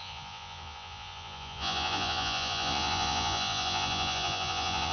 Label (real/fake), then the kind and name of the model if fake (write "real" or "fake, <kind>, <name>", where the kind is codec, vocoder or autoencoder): fake, vocoder, Vocos